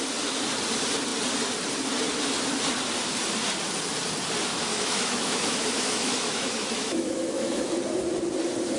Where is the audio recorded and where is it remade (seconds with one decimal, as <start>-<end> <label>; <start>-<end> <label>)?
0.0-4.5 recorded; 4.5-7.7 remade; 7.7-8.8 recorded